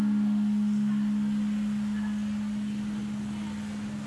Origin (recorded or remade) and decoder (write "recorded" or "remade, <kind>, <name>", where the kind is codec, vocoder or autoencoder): recorded